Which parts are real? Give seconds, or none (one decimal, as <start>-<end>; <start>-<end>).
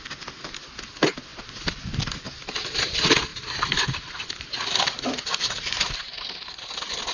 0.0-3.3; 5.5-7.1